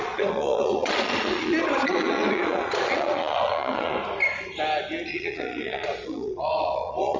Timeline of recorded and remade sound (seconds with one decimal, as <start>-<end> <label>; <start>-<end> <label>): 0.0-4.0 remade; 4.0-5.1 recorded; 5.1-7.2 remade